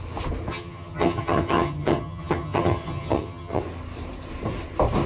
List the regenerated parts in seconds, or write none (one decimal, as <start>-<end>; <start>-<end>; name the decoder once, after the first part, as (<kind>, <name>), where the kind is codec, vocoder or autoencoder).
0.5-3.6 (vocoder, HiFi-GAN)